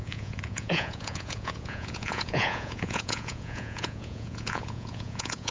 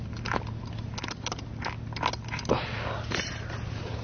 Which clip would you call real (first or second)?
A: second